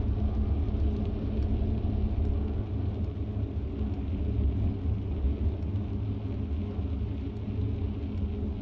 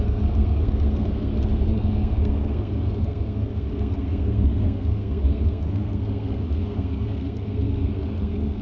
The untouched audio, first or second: first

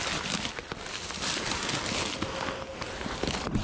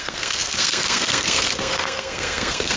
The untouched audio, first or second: first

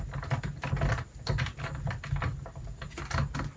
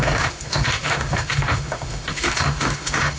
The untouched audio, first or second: first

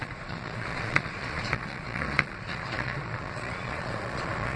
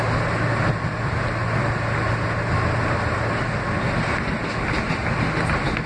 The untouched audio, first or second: second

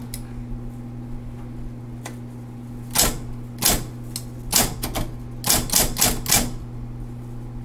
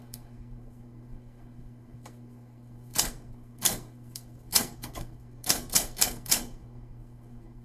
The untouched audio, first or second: first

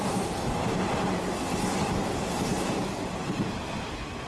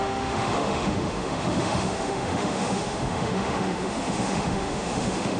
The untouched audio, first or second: first